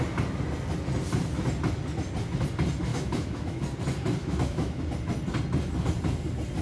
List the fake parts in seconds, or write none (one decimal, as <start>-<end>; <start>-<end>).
2.9-3.6; 4.2-4.8